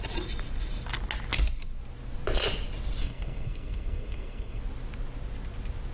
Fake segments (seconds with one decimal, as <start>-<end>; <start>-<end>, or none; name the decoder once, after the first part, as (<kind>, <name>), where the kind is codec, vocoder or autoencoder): 3.0-4.6 (codec, SNAC)